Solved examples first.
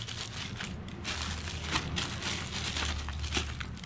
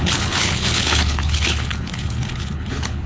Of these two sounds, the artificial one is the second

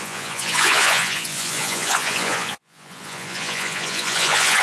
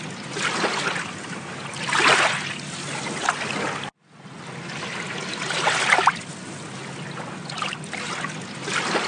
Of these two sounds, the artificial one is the first